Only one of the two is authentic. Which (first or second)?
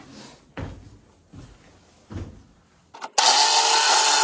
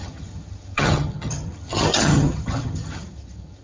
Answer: first